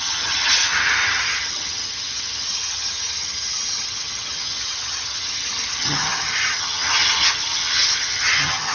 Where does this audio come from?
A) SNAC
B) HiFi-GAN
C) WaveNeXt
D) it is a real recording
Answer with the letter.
B